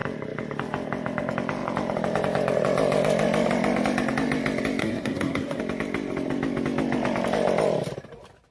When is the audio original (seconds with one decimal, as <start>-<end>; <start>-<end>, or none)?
0.0-4.8; 5.6-8.5